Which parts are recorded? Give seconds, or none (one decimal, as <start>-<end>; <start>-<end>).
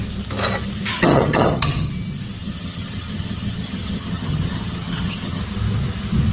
0.0-0.9; 1.9-2.4; 5.4-6.3